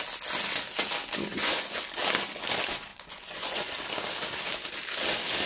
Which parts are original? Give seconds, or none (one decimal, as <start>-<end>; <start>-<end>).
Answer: 0.0-1.3; 1.8-2.9; 3.7-5.5